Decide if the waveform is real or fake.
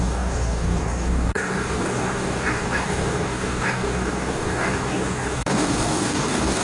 fake